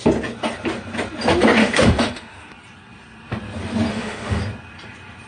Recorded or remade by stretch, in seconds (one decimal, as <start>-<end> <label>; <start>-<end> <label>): 0.0-1.6 recorded; 1.6-2.5 remade; 2.5-3.9 recorded; 3.9-4.4 remade; 4.4-5.3 recorded